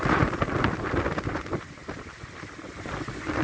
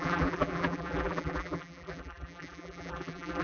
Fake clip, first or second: second